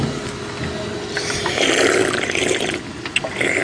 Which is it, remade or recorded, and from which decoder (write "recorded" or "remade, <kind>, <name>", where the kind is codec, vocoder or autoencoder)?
recorded